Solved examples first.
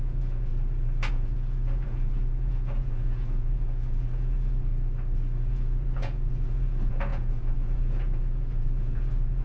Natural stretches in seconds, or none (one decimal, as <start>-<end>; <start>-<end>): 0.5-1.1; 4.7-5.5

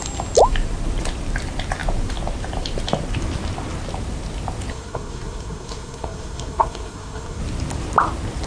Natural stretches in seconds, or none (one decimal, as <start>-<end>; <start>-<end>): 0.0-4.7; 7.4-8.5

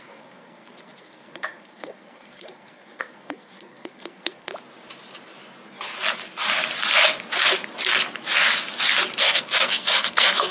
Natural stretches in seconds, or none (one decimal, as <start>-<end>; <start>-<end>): 4.5-9.2

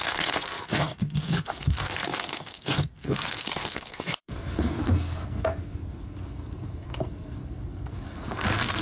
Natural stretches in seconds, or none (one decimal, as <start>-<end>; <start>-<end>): none

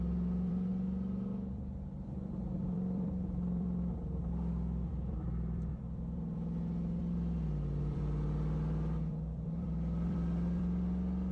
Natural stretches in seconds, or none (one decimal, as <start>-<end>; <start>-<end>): 0.7-1.5; 7.0-7.8